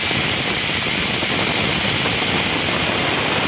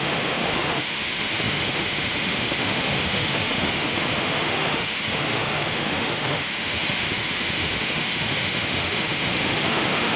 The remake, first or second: second